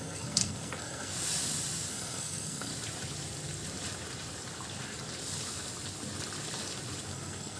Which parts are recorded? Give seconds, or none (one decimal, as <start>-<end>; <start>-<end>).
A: 1.1-1.9; 2.7-7.1